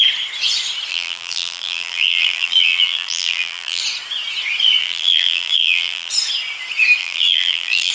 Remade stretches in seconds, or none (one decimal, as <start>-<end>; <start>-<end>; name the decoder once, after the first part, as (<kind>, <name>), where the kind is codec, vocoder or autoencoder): 0.9-3.8 (vocoder, BigVGAN v2); 4.8-6.1; 7.0-7.9